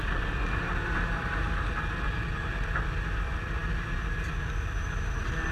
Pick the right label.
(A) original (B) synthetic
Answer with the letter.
A